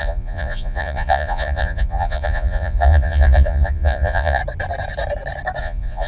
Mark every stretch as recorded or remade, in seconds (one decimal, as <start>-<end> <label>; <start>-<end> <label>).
0.0-4.4 remade; 4.4-5.6 recorded; 5.6-6.1 remade